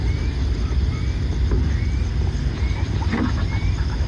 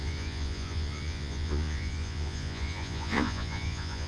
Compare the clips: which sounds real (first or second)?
first